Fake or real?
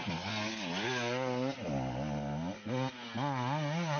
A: real